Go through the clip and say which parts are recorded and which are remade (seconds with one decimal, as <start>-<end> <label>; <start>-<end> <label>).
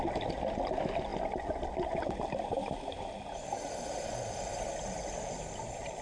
0.0-6.0 recorded